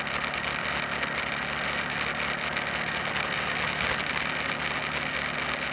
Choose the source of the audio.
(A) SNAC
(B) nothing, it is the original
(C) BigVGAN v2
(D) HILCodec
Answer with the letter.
B